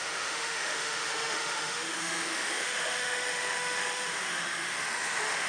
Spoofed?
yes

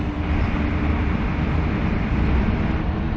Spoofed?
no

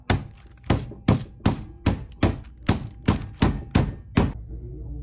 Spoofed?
no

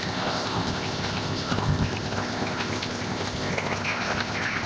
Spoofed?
yes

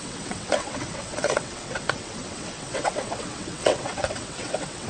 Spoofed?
yes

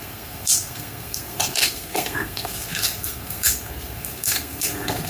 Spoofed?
yes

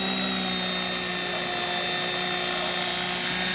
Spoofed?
no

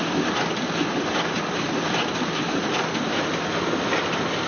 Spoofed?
no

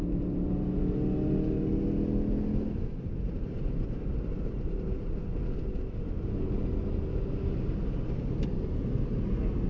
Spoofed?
no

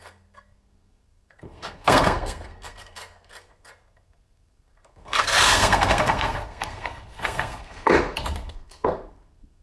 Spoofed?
yes